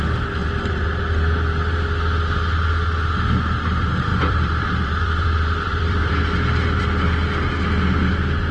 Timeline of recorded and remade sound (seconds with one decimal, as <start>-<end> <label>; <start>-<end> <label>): 0.0-4.1 recorded; 4.1-6.1 remade; 6.1-8.5 recorded